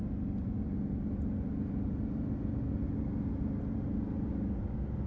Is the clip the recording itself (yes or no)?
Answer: yes